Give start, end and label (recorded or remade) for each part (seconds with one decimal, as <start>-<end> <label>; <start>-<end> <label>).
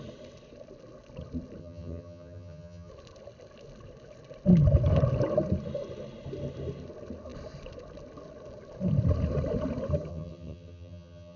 0.0-1.6 recorded; 1.6-2.9 remade; 2.9-10.1 recorded; 10.1-11.4 remade